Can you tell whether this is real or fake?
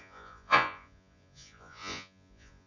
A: fake